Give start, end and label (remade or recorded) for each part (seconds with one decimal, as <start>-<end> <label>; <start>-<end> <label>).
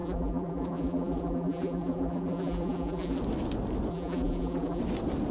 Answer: 0.0-3.2 remade; 3.2-3.9 recorded; 3.9-4.8 remade; 4.8-5.3 recorded